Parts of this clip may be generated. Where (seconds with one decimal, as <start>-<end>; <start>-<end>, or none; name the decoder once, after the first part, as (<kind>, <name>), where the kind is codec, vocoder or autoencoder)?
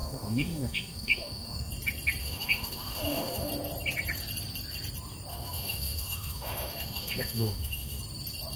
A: 0.0-1.7 (autoencoder, DAC-VAE); 2.2-3.5; 5.3-8.0